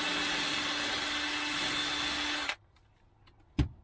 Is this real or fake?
real